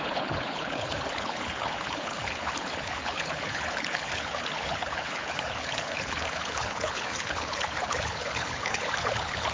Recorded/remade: remade